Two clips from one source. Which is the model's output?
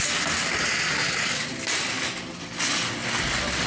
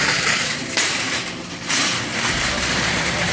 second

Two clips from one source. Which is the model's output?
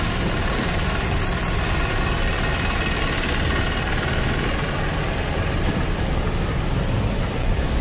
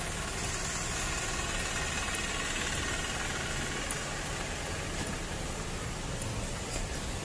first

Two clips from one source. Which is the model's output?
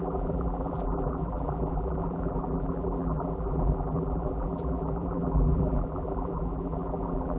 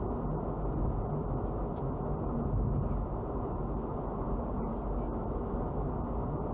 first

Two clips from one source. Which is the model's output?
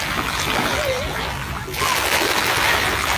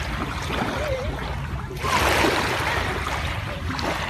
first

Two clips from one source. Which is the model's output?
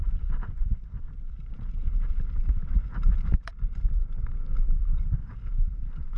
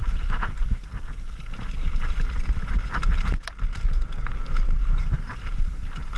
first